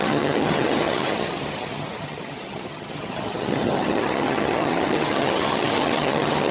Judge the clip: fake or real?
fake